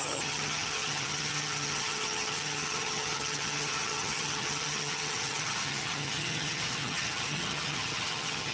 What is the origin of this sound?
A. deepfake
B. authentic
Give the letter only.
A